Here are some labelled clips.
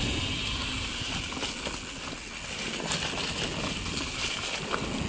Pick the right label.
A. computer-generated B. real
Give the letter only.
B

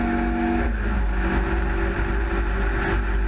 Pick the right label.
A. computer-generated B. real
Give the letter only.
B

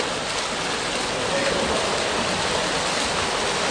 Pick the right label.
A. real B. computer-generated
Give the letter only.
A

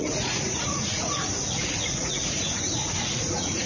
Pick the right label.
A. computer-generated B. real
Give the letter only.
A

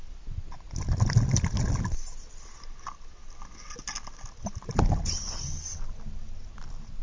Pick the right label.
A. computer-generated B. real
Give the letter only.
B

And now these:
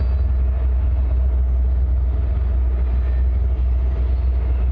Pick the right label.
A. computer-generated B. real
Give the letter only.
B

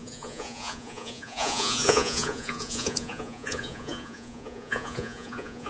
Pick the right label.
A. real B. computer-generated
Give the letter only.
B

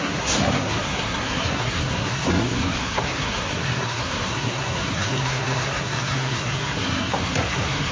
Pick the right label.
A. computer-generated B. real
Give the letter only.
A